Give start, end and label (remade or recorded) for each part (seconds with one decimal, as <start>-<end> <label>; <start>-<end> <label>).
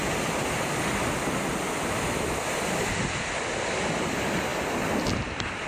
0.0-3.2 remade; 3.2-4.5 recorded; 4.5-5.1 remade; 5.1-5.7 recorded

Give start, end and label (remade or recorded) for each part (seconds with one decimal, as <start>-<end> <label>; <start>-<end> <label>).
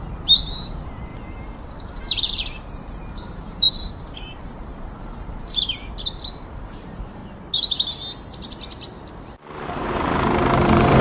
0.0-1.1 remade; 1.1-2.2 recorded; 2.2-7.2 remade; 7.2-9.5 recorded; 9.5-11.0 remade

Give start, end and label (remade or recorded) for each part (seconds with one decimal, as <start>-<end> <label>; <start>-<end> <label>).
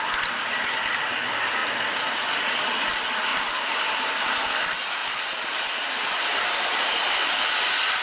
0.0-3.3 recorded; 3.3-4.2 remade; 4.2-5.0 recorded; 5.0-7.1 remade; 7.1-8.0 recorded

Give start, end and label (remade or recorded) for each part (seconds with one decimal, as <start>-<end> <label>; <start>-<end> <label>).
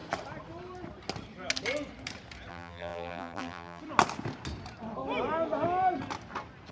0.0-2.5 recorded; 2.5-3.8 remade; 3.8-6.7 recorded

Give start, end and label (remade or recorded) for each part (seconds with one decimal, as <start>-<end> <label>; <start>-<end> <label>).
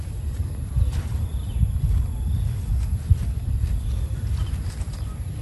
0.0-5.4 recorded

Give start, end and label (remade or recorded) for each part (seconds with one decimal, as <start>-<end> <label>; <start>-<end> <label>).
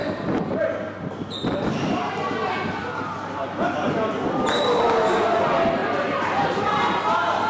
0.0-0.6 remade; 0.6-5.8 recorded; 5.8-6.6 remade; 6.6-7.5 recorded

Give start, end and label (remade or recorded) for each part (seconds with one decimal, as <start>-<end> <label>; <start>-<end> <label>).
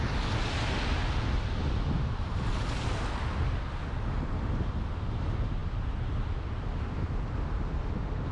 0.0-1.0 recorded; 1.0-2.5 remade; 2.5-8.3 recorded